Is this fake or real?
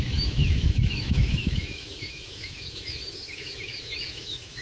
fake